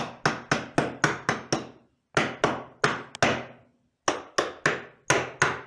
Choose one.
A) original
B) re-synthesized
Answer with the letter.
A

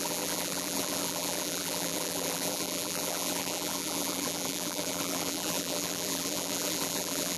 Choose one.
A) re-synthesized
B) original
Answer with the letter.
A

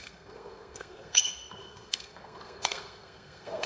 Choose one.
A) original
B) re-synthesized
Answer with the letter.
B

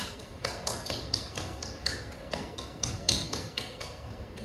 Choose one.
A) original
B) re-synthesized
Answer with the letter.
B